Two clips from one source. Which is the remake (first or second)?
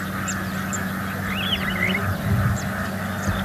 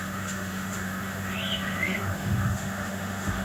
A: second